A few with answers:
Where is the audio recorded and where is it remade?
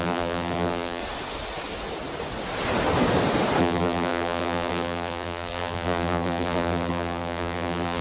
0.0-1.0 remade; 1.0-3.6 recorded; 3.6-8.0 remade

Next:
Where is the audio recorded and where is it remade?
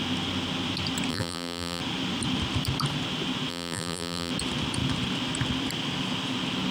0.0-1.1 recorded; 1.1-1.8 remade; 1.8-3.5 recorded; 3.5-4.3 remade; 4.3-6.7 recorded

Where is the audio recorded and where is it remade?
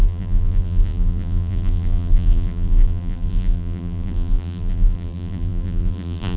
0.0-6.4 remade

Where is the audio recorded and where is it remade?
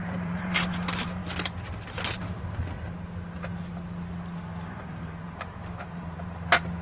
0.0-1.2 remade; 1.2-5.0 recorded; 5.0-6.8 remade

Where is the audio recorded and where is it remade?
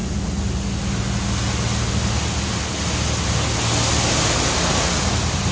0.0-5.5 recorded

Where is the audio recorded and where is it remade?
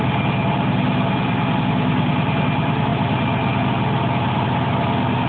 0.0-5.3 recorded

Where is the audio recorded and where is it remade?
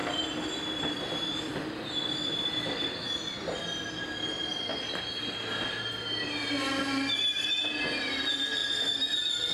0.0-1.5 remade; 1.5-8.6 recorded; 8.6-9.5 remade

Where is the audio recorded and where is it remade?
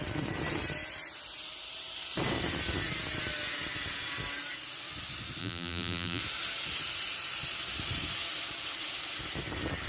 0.0-5.4 recorded; 5.4-6.2 remade; 6.2-9.9 recorded